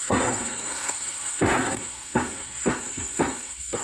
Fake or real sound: fake